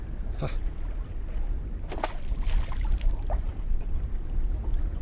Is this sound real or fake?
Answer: real